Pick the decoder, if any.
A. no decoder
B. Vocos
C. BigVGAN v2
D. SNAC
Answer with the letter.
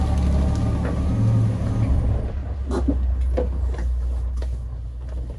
A